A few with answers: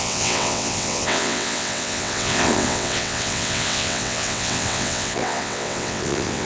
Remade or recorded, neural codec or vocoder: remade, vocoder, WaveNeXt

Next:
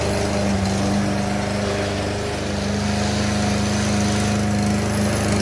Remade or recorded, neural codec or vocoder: recorded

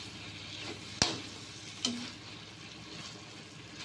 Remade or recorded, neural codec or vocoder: recorded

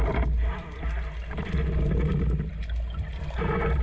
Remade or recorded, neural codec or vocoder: recorded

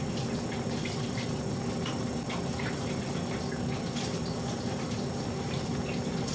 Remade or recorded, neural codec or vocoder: recorded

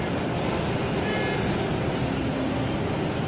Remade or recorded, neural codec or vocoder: recorded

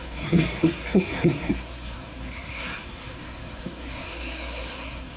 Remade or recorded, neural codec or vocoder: remade, codec, SNAC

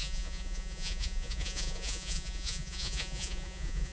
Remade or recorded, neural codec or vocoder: remade, vocoder, Vocos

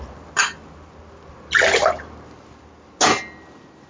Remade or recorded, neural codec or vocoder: recorded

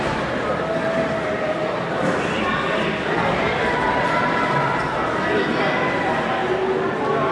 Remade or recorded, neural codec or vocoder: recorded